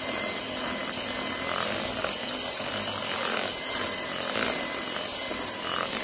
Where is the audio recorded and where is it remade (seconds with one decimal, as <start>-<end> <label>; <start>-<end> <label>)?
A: 0.0-0.8 remade; 0.8-2.1 recorded; 2.1-6.0 remade